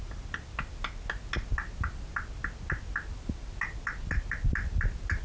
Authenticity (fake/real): real